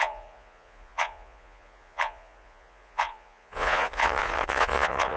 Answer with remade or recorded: remade